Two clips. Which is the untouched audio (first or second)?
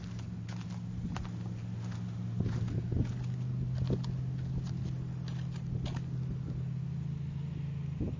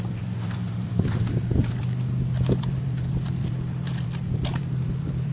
first